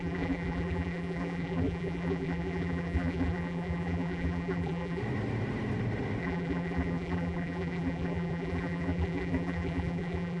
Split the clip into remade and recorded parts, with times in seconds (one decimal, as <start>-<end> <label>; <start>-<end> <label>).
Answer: 0.0-5.0 remade; 5.0-6.2 recorded; 6.2-10.4 remade